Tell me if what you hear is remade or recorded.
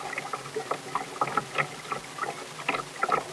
recorded